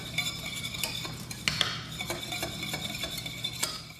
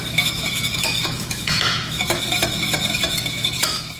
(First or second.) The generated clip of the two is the second